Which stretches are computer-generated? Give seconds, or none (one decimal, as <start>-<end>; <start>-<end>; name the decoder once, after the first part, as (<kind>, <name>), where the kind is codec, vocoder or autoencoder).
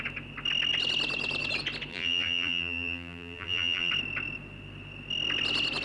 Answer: 1.9-3.9 (vocoder, BigVGAN v2)